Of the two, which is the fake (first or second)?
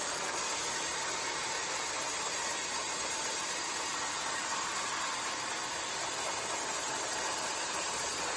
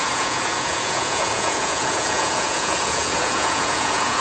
second